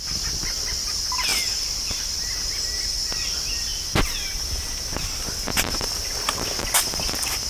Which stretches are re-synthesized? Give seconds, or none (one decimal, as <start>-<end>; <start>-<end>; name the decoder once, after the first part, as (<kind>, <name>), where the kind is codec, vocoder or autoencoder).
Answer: none